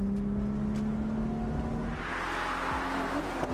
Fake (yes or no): no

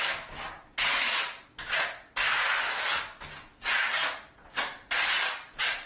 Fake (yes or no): no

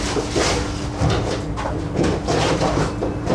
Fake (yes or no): no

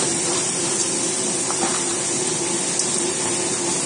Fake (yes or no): no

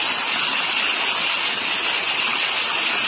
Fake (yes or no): no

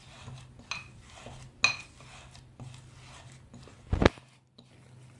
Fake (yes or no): no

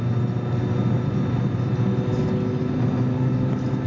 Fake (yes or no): no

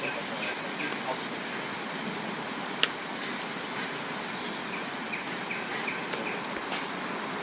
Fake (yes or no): no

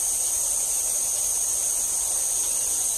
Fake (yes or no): no